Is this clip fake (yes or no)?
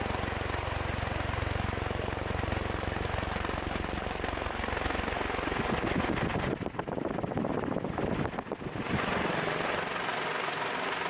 no